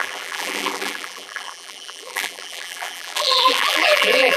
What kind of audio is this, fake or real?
fake